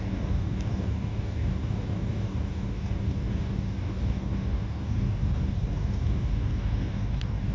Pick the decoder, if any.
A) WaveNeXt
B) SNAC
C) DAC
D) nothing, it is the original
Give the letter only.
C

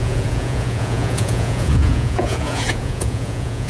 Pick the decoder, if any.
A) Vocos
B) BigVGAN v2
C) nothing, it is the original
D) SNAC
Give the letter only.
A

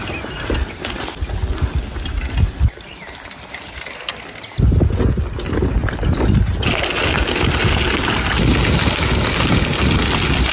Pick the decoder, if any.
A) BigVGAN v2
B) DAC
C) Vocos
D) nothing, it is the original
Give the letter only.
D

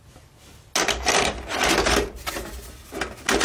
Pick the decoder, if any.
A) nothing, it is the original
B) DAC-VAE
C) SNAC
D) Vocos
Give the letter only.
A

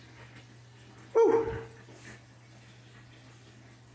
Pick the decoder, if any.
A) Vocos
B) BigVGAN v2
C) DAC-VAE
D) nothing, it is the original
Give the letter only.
D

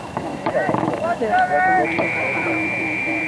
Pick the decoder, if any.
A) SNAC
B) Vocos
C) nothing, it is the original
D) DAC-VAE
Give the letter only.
D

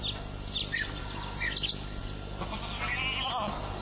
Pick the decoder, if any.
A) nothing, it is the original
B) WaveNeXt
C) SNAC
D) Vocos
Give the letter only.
A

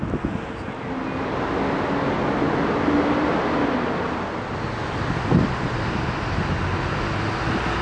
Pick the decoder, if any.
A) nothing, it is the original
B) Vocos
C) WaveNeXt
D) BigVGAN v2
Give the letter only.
A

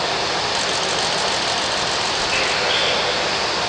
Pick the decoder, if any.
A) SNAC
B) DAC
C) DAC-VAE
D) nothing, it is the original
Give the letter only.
D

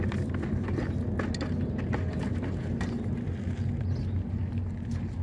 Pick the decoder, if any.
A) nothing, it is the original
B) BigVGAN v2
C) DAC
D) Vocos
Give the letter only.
A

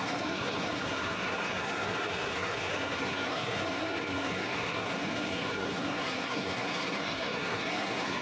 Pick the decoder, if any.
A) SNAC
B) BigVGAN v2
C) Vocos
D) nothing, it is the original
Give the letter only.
A